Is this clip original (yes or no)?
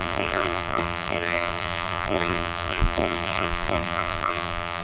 no